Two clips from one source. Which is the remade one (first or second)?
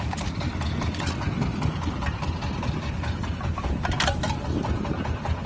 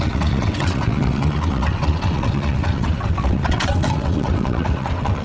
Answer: second